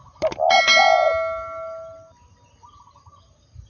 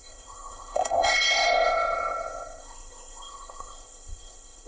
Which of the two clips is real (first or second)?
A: first